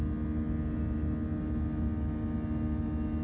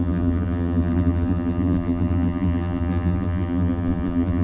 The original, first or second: first